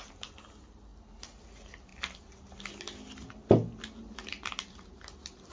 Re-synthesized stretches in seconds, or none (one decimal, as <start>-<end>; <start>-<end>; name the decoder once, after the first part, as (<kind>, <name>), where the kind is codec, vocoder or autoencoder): none